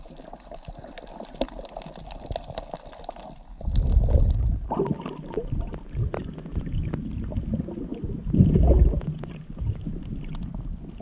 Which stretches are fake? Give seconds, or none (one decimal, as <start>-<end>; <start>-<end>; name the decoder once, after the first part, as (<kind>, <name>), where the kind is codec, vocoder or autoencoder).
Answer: none